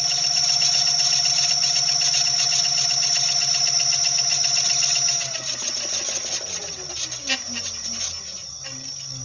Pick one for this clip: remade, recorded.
recorded